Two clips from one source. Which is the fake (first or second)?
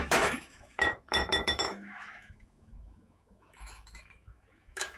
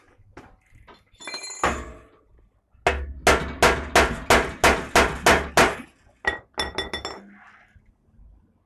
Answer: first